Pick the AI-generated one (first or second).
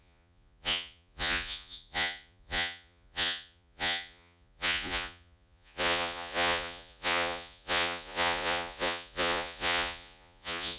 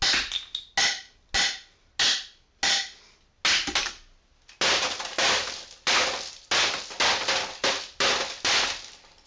first